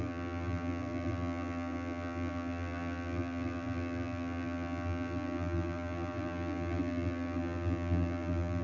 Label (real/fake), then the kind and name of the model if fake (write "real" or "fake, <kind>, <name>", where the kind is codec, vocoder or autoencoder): fake, vocoder, BigVGAN v2